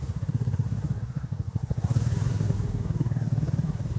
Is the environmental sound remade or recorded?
remade